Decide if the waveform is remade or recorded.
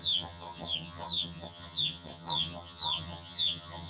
remade